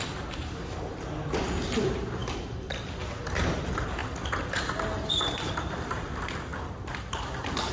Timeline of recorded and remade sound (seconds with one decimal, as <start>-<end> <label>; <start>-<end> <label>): 0.0-7.7 recorded